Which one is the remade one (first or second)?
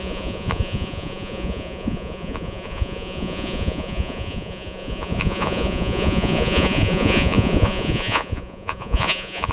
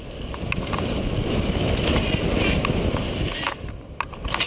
first